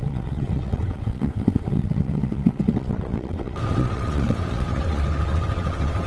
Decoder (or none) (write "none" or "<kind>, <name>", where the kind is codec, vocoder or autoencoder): vocoder, WaveNeXt